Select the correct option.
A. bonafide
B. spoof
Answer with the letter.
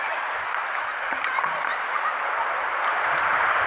A